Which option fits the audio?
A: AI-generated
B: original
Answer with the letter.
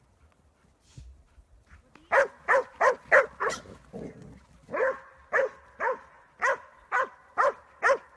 B